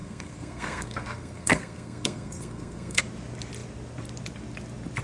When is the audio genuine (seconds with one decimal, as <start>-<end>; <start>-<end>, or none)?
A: 3.0-5.0